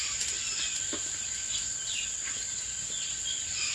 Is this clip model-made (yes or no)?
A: no